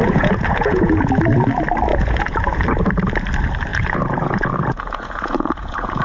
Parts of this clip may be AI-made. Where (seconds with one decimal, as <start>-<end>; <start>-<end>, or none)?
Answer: 0.0-1.1; 1.9-2.6; 3.7-6.0

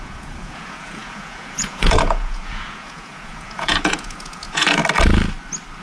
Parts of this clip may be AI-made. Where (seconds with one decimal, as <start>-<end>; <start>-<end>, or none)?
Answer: 0.0-4.8

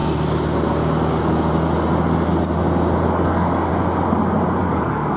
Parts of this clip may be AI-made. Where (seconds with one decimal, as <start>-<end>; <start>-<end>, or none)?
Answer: 3.1-3.7; 4.6-5.2